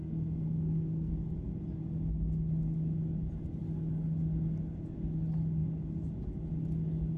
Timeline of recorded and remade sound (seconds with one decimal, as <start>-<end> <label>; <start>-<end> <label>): 0.0-1.1 remade; 1.1-7.2 recorded